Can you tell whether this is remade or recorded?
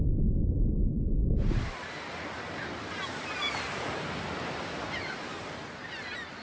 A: recorded